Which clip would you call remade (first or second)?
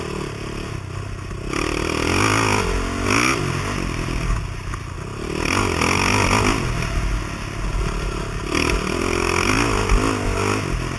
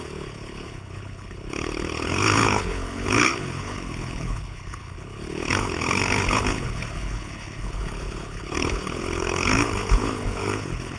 second